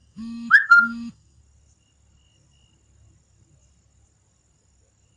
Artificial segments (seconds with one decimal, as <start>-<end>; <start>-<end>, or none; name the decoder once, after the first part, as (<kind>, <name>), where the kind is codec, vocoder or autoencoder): 0.0-1.4 (codec, DAC)